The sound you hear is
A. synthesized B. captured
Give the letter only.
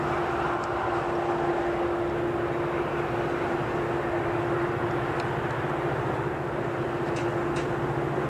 B